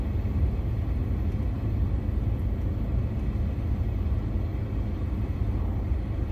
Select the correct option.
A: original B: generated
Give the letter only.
A